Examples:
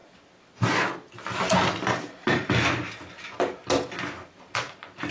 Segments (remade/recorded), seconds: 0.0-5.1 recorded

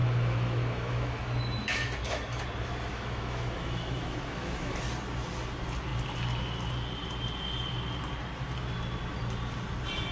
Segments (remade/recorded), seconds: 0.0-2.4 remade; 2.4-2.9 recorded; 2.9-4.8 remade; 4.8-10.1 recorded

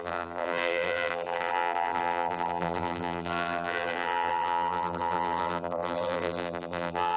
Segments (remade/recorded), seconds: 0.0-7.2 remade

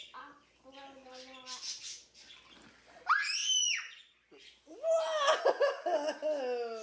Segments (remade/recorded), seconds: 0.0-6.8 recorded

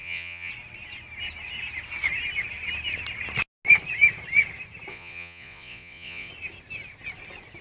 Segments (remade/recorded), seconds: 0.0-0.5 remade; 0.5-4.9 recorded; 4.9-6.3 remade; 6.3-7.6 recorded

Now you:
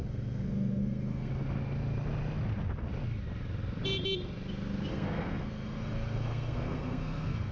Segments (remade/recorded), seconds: 0.0-1.3 remade; 1.3-4.9 recorded; 4.9-7.5 remade

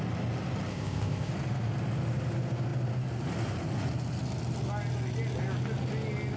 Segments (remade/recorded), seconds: 0.0-0.7 recorded; 0.7-1.3 remade; 1.3-6.4 recorded

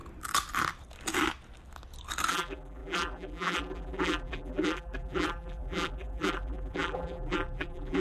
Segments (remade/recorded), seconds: 0.0-2.3 recorded; 2.3-8.0 remade